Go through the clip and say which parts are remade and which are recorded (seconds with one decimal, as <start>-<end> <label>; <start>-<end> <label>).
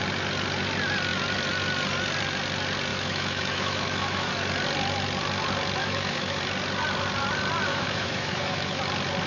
0.0-2.9 recorded; 2.9-4.3 remade; 4.3-5.8 recorded; 5.8-6.4 remade; 6.4-7.7 recorded; 7.7-8.8 remade; 8.8-9.3 recorded